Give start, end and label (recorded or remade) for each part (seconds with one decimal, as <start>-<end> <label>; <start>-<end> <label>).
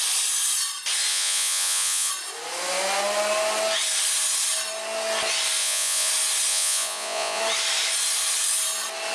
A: 0.0-1.1 recorded; 1.1-2.1 remade; 2.1-5.6 recorded; 5.6-6.1 remade; 6.1-6.5 recorded; 6.5-7.4 remade; 7.4-9.1 recorded